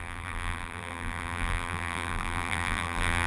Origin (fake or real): fake